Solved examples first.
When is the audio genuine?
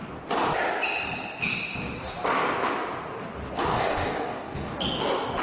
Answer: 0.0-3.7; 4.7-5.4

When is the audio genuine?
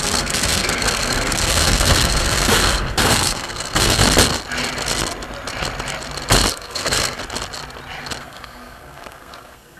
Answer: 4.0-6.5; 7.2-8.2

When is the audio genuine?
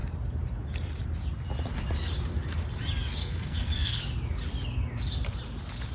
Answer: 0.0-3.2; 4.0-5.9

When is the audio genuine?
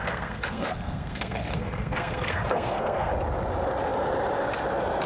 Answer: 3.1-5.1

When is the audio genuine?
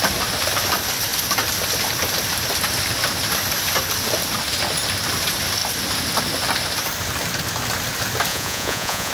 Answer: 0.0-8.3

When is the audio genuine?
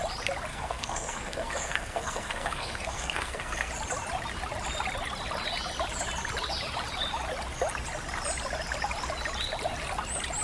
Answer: 0.0-0.5; 3.7-10.4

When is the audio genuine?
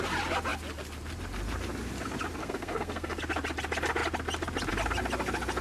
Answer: 0.0-2.4; 3.2-5.6